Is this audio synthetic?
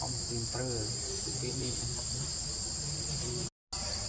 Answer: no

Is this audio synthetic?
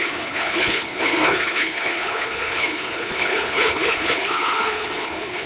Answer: yes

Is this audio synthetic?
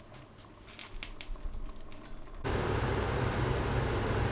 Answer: no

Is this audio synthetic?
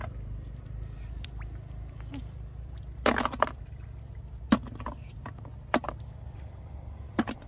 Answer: no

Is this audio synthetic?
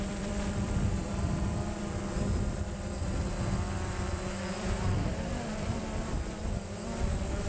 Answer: yes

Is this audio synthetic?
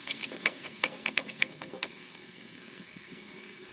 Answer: yes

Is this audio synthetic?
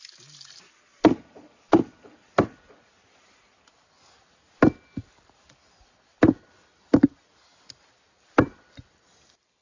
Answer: no